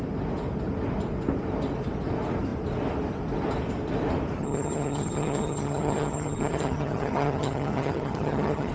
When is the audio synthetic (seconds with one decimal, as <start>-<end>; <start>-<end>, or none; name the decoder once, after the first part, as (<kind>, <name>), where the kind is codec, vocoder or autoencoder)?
4.4-8.7 (vocoder, HiFi-GAN)